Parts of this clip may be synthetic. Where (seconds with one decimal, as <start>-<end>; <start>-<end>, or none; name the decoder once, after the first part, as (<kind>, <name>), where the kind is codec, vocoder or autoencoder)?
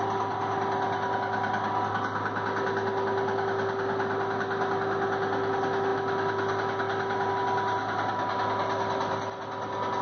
none